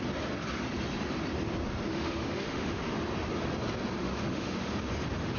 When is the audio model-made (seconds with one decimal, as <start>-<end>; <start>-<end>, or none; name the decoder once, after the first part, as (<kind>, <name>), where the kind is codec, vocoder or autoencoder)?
1.9-2.8 (autoencoder, DAC-VAE); 4.0-4.7